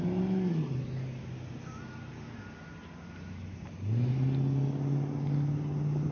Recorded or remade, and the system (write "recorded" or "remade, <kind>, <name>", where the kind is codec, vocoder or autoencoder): recorded